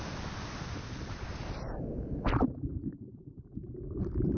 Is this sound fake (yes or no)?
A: no